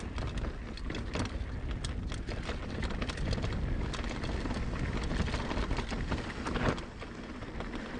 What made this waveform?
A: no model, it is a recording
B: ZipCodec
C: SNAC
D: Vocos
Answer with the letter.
A